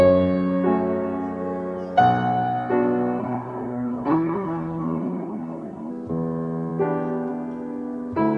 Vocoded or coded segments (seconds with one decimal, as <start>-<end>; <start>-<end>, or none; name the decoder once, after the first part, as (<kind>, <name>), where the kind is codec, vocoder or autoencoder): 3.2-5.9 (codec, SNAC)